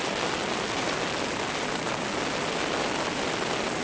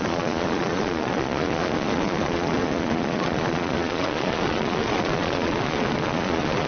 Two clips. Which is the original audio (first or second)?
first